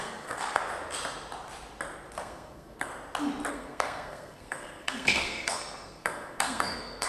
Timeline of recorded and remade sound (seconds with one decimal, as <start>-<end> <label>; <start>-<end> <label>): 0.0-0.6 remade; 0.6-2.2 recorded; 2.2-2.9 remade; 2.9-3.5 recorded; 3.5-7.1 remade